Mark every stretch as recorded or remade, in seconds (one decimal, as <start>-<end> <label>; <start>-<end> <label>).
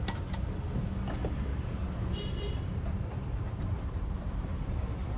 0.0-1.5 recorded; 1.5-4.6 remade; 4.6-5.2 recorded